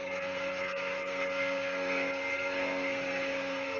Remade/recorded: remade